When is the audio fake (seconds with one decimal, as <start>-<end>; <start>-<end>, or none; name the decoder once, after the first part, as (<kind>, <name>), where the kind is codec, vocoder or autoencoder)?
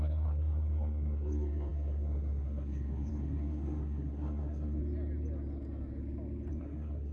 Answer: 0.0-4.8 (codec, SNAC); 6.5-7.1